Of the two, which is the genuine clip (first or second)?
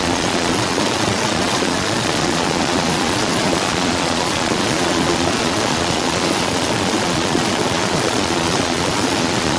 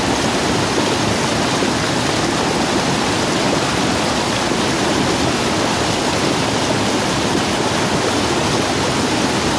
second